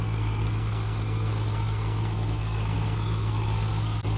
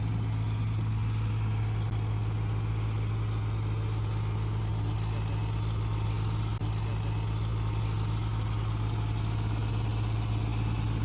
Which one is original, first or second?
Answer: second